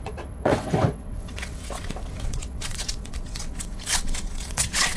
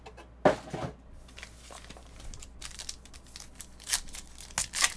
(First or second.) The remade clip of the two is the first